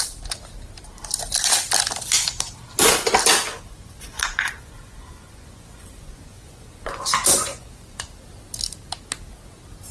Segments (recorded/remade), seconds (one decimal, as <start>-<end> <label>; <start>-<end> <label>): 0.0-3.5 recorded; 3.5-8.1 remade; 8.1-9.9 recorded